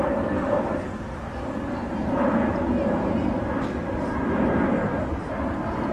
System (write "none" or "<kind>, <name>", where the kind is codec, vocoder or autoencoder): none